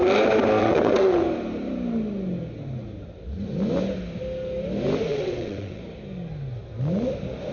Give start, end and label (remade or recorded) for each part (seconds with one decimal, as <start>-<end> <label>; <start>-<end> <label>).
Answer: 0.0-0.6 recorded; 0.6-1.2 remade; 1.2-5.1 recorded; 5.1-5.8 remade; 5.8-7.5 recorded